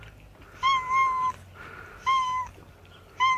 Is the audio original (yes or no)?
yes